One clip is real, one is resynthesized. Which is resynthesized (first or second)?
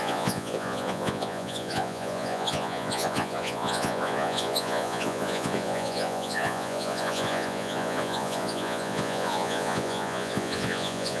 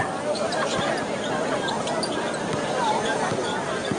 first